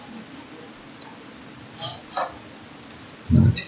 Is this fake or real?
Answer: real